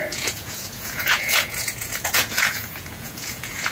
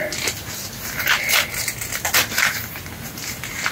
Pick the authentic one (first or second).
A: second